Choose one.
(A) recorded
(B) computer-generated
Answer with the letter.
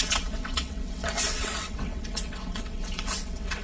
B